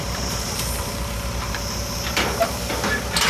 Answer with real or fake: fake